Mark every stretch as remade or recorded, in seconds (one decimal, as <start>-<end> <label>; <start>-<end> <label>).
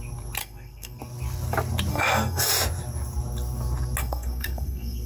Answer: 0.0-0.4 recorded; 0.4-1.0 remade; 1.0-1.9 recorded; 1.9-2.5 remade; 2.5-4.0 recorded; 4.0-5.1 remade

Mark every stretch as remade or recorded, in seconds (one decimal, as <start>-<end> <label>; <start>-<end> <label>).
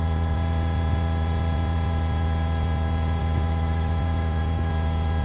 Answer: 0.0-3.2 recorded; 3.2-4.7 remade; 4.7-5.2 recorded